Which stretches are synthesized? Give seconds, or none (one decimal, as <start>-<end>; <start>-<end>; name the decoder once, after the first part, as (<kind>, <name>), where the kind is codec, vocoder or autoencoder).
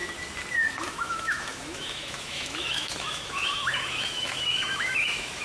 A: 0.8-5.4 (autoencoder, DAC-VAE)